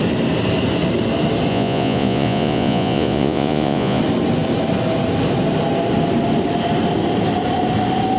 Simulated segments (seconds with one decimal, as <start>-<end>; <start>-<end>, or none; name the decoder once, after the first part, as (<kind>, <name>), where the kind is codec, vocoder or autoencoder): 1.5-4.0 (vocoder, Vocos)